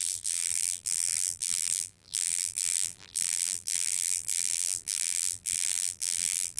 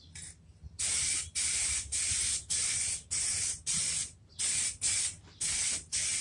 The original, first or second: second